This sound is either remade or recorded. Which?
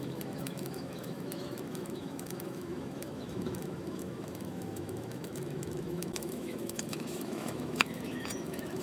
remade